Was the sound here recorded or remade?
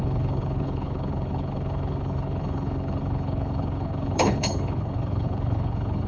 remade